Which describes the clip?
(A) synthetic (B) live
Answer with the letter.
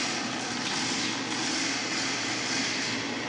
B